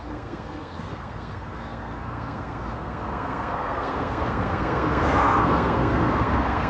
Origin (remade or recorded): remade